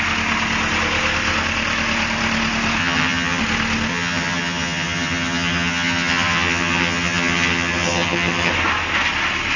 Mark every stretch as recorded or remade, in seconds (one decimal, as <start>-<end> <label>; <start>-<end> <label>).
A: 0.0-2.8 recorded; 2.8-3.4 remade; 3.4-3.9 recorded; 3.9-8.5 remade; 8.5-9.6 recorded